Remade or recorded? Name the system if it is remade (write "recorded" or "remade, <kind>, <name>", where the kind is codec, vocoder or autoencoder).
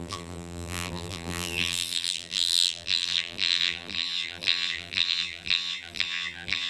remade, vocoder, BigVGAN v2